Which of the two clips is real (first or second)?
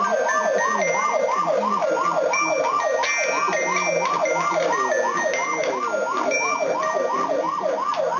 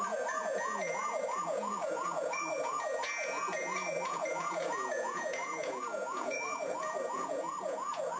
first